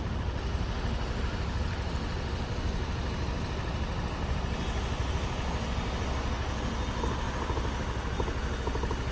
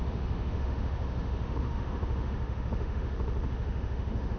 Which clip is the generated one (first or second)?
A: second